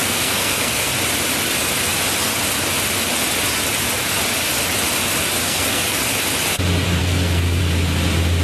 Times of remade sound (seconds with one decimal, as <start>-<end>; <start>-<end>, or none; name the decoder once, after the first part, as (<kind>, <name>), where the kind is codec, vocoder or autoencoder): 0.0-0.9 (codec, SNAC); 5.4-6.0; 7.0-7.6